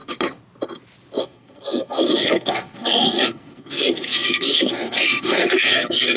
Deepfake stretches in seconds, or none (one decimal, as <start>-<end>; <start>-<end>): 1.2-6.2